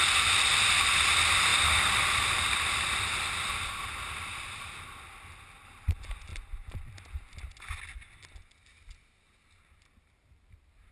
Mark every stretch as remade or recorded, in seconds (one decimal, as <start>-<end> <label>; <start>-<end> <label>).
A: 0.0-1.5 recorded; 1.5-2.9 remade; 2.9-10.9 recorded